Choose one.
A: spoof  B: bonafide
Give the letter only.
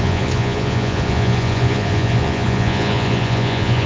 A